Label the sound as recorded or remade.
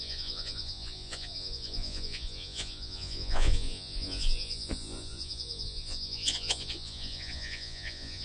remade